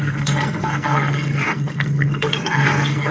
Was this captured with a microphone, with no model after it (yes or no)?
no